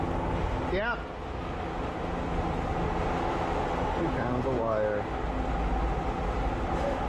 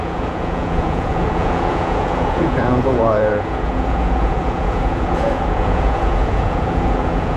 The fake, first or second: second